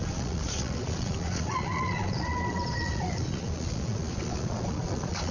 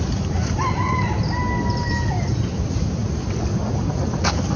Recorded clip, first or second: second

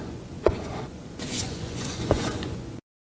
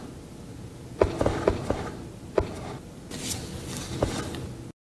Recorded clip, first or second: second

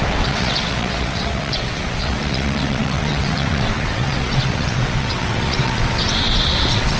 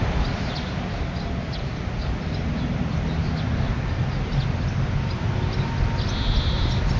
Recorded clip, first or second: second